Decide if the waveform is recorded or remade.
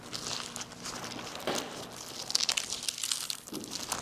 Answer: recorded